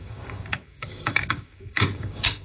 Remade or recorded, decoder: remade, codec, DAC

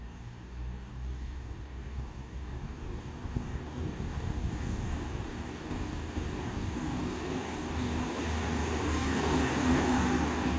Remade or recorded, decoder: remade, codec, DAC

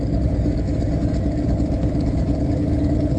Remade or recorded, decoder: remade, codec, DAC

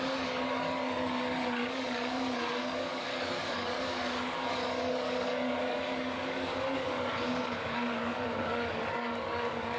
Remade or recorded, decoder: remade, codec, DAC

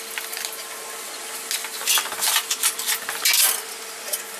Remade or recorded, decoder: recorded